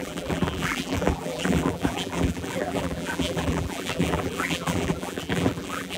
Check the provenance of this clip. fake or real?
fake